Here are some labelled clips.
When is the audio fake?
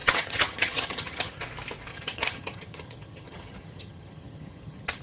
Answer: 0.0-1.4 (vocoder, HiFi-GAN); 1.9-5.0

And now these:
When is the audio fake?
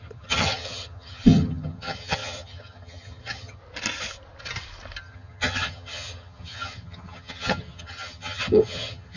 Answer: 0.0-3.6 (vocoder, HiFi-GAN); 5.0-9.2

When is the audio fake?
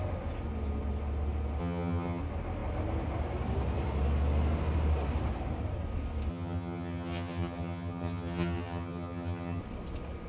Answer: 1.6-2.2 (vocoder, HiFi-GAN); 6.3-9.6